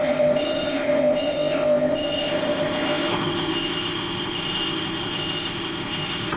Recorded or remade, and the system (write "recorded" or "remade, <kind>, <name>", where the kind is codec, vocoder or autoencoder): remade, codec, ZipCodec